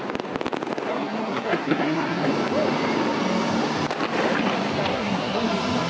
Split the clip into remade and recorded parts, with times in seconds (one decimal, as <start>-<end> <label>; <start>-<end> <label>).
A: 0.0-0.9 recorded; 0.9-2.3 remade; 2.3-4.9 recorded; 4.9-5.5 remade; 5.5-5.9 recorded